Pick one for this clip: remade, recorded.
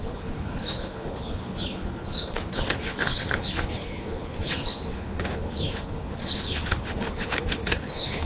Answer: remade